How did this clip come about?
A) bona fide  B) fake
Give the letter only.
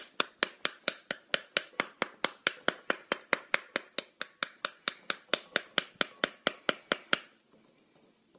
A